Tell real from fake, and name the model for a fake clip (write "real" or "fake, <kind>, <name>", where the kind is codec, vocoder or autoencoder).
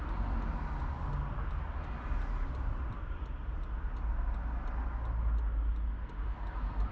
real